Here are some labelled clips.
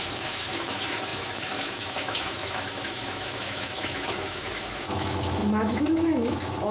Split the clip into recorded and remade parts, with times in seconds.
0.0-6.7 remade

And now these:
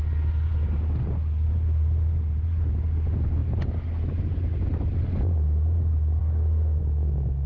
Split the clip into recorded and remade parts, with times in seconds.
0.0-6.2 recorded; 6.2-6.8 remade; 6.8-7.5 recorded

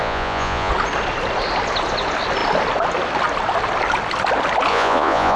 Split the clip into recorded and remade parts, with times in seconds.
0.0-0.7 remade; 0.7-4.7 recorded; 4.7-5.4 remade

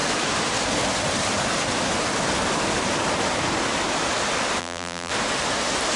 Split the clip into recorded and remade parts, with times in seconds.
0.0-4.6 recorded; 4.6-5.1 remade; 5.1-6.0 recorded